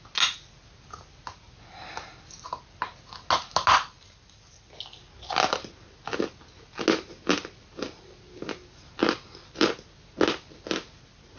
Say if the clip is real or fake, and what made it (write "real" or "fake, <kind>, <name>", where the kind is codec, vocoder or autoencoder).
real